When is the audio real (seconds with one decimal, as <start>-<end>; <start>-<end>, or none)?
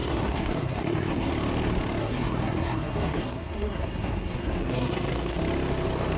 1.3-2.0; 5.4-6.2